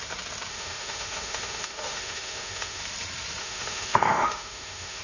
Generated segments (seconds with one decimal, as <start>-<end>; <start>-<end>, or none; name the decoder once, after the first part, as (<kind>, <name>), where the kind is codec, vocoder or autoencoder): 0.5-2.8 (autoencoder, DAC-VAE); 3.4-5.0